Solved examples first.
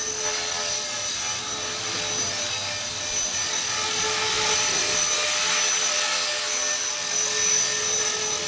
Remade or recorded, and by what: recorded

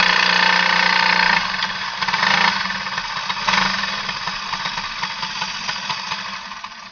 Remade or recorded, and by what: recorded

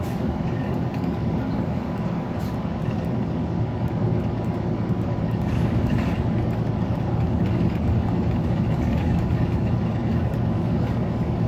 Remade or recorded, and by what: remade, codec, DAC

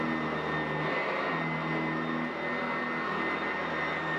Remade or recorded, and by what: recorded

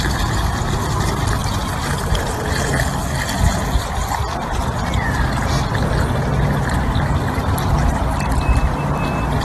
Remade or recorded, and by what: recorded